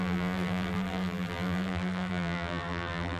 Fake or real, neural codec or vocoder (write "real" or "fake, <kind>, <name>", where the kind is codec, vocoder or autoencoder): fake, vocoder, BigVGAN v2